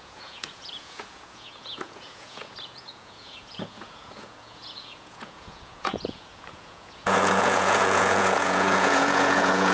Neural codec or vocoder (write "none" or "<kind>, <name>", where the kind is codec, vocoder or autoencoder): vocoder, Vocos